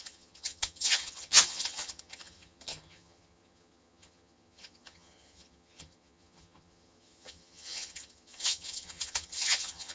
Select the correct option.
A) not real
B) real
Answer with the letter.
A